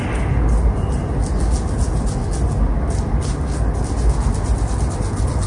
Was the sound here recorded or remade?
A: recorded